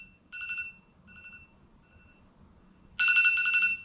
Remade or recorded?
recorded